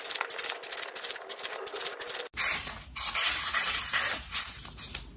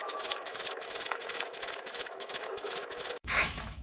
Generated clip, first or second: second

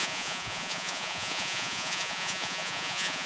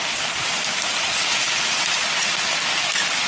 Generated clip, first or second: first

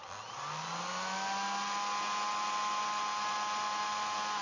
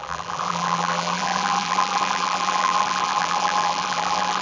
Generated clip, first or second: second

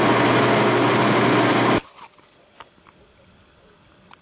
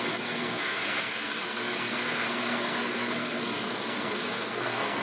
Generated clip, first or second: second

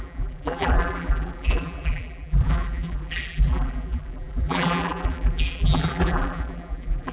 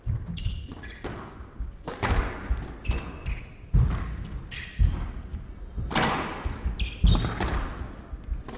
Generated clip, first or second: first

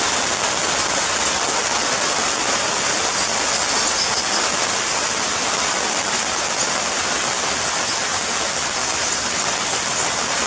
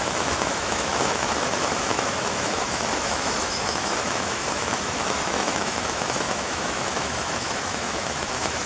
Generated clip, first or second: second